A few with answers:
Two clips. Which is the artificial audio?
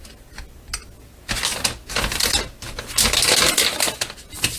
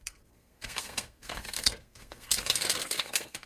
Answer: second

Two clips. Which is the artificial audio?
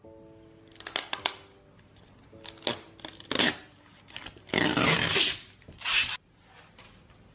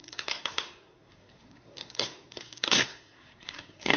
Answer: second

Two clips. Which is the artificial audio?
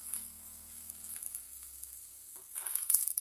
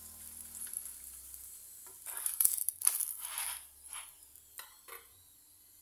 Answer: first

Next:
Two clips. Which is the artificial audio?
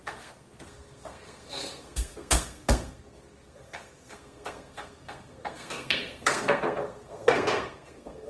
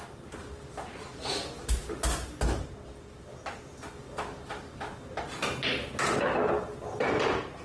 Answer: first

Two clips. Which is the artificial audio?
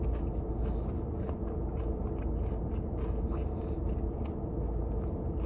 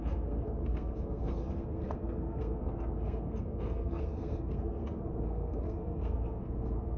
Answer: second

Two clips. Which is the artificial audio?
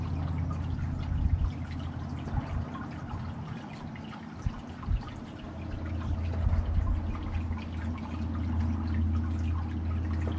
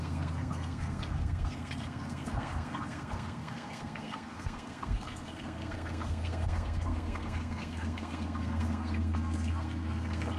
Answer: second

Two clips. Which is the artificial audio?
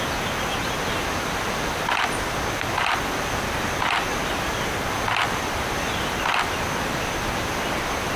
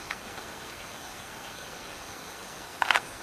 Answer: second